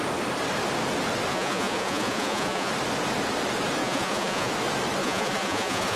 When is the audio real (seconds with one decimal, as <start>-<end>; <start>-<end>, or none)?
0.0-1.3; 2.7-3.8; 4.5-5.0